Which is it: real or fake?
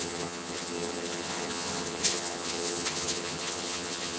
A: fake